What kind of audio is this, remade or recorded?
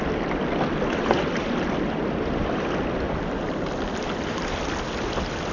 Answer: recorded